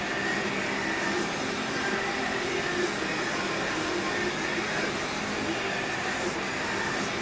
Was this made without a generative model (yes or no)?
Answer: yes